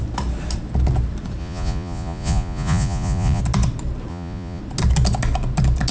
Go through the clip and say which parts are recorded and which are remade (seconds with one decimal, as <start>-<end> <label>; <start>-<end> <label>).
0.0-1.4 recorded; 1.4-3.4 remade; 3.4-4.1 recorded; 4.1-4.6 remade; 4.6-5.9 recorded